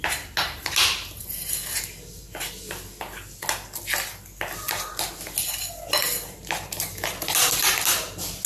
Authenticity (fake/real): real